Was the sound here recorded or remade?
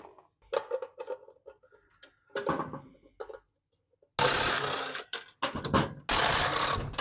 recorded